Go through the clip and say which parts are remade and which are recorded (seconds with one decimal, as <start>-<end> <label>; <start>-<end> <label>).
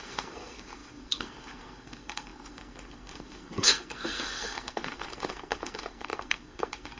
0.0-7.0 remade